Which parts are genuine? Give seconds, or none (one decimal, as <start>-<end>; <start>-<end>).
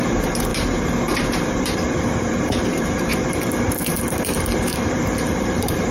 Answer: none